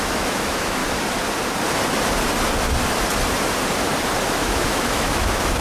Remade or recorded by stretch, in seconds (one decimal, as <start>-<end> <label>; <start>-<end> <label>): 0.0-0.8 remade; 0.8-4.2 recorded; 4.2-5.6 remade